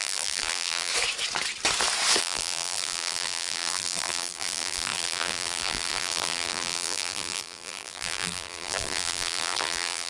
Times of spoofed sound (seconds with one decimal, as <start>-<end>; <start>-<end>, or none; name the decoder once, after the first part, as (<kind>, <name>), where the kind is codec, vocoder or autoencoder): 0.0-0.9 (vocoder, BigVGAN v2); 2.2-10.1